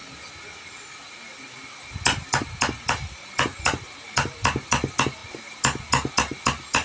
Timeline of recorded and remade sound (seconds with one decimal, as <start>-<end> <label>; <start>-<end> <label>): 0.0-6.8 recorded